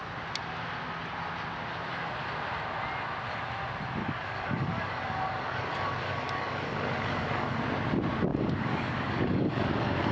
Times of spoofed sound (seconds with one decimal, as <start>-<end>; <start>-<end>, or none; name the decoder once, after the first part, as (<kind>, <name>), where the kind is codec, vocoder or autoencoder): 4.0-7.6 (codec, DAC); 8.3-10.1